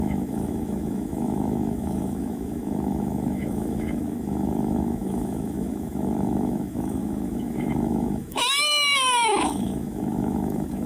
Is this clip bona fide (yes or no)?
no